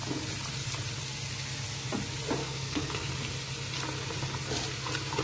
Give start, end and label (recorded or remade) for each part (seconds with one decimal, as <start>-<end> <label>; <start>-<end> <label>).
0.0-2.4 recorded; 2.4-3.1 remade; 3.1-5.2 recorded